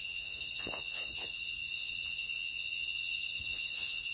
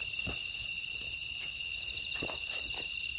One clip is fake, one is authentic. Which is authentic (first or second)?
second